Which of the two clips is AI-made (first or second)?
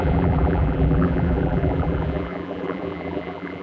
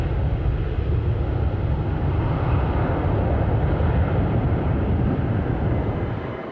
first